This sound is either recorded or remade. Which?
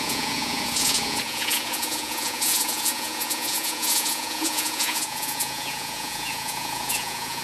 remade